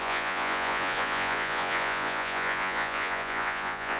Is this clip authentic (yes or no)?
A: no